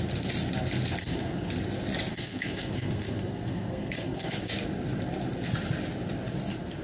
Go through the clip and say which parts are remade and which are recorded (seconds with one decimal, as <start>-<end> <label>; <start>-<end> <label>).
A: 0.0-1.0 recorded; 1.0-1.5 remade; 1.5-2.1 recorded; 2.1-4.5 remade; 4.5-6.8 recorded